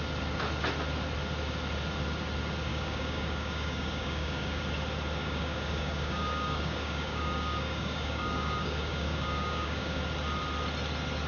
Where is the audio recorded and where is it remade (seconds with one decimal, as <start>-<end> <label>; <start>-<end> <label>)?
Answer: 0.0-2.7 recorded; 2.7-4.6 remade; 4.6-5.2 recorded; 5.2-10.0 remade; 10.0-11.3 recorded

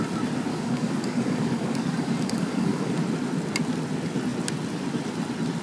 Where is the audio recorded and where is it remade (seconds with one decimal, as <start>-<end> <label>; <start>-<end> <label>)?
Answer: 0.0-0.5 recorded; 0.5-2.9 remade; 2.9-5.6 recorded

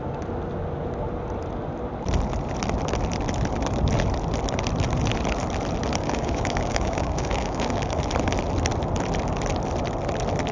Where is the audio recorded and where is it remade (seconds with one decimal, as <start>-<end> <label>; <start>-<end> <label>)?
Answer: 0.0-6.0 recorded; 6.0-8.0 remade; 8.0-10.5 recorded

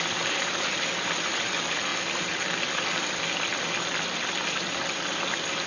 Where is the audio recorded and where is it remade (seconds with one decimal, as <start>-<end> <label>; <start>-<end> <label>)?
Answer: 0.0-5.7 recorded